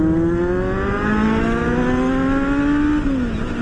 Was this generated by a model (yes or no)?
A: no